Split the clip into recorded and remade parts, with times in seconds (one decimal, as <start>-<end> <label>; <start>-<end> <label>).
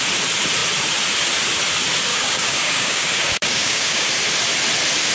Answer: 0.0-2.1 recorded; 2.1-4.1 remade; 4.1-5.1 recorded